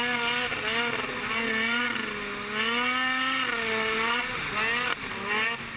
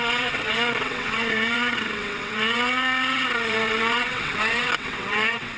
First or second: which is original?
first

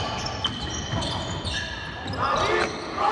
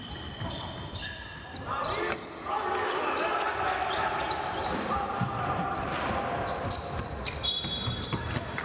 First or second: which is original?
first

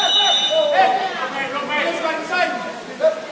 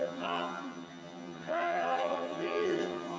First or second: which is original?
first